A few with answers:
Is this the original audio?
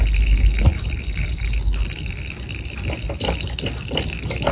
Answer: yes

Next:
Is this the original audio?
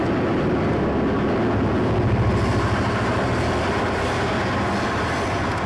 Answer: yes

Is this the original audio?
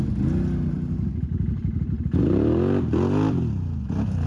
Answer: yes